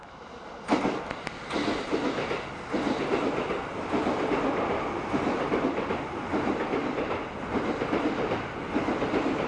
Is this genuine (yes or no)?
yes